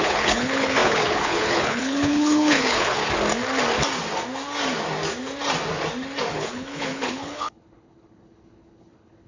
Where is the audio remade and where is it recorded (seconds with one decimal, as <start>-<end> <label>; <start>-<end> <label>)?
0.0-3.0 remade; 3.0-6.3 recorded; 6.3-9.3 remade